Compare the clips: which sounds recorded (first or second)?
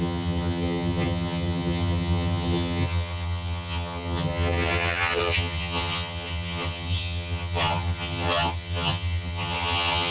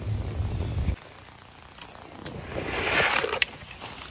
second